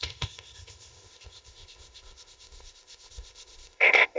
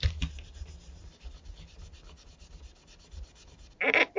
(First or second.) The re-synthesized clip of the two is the first